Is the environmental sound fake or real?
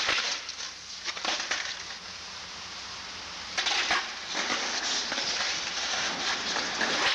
real